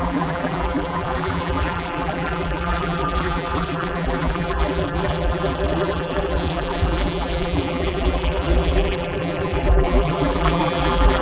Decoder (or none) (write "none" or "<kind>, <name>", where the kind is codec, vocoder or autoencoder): vocoder, BigVGAN v2